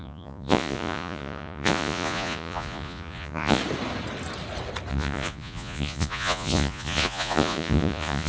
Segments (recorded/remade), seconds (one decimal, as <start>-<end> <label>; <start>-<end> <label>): 0.0-3.6 remade; 3.6-4.9 recorded; 4.9-8.3 remade